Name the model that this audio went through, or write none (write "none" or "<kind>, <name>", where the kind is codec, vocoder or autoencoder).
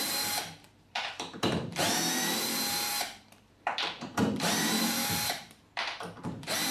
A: vocoder, BigVGAN v2